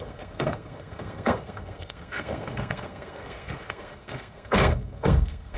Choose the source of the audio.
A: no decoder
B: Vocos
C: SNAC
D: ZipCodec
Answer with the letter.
C